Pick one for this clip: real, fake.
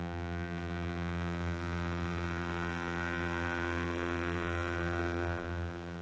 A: fake